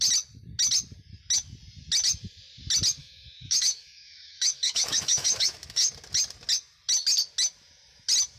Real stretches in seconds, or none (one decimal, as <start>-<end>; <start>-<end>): 0.0-3.0; 5.9-8.4